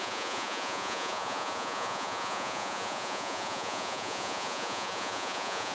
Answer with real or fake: fake